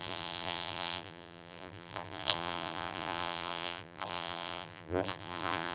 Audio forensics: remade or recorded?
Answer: remade